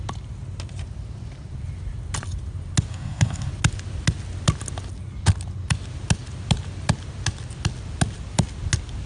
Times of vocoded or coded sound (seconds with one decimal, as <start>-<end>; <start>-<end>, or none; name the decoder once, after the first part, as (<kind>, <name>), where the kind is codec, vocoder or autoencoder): 2.9-3.5 (codec, SNAC)